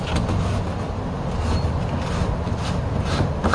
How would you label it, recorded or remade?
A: recorded